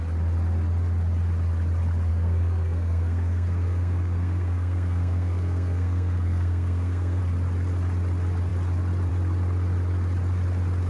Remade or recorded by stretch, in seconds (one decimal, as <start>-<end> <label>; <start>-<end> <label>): 0.0-2.1 recorded; 2.1-7.2 remade; 7.2-10.9 recorded